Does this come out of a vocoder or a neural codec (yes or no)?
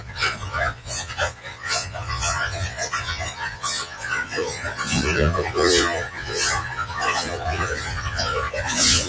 yes